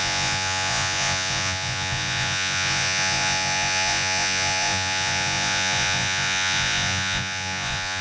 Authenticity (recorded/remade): remade